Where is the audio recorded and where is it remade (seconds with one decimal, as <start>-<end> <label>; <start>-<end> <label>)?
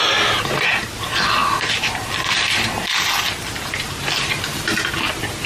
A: 0.0-5.5 recorded